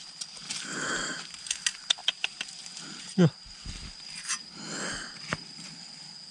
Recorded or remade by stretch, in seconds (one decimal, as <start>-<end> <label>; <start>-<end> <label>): 0.0-6.3 recorded